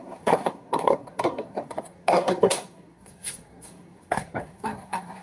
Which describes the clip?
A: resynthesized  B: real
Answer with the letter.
A